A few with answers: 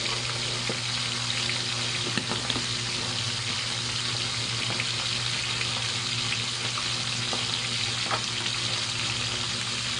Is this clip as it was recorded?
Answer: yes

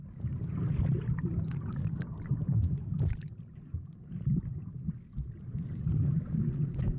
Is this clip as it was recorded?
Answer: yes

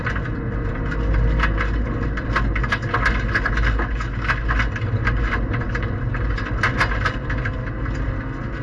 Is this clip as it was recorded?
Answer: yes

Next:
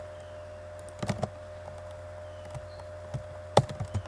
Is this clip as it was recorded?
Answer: yes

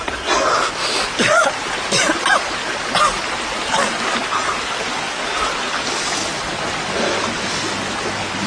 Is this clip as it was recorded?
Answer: yes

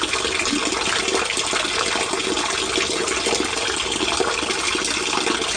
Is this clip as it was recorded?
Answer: yes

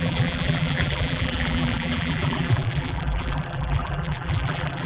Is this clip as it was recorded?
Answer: no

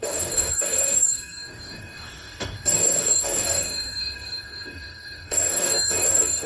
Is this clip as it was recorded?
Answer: no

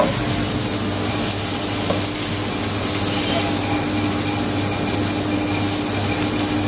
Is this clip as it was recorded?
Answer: yes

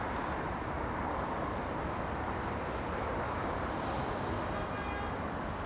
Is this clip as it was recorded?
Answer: yes